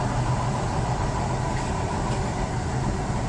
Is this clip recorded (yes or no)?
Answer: yes